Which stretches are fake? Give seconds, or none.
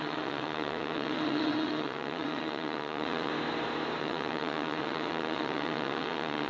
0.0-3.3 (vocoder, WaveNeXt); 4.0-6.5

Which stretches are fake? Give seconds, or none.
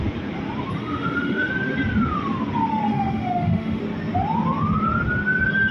0.8-1.5 (autoencoder, DAC-VAE); 2.7-3.8